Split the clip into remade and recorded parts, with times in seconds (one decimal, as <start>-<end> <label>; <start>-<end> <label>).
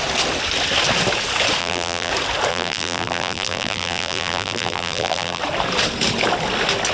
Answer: 0.0-1.6 recorded; 1.6-2.1 remade; 2.1-2.5 recorded; 2.5-5.4 remade; 5.4-6.9 recorded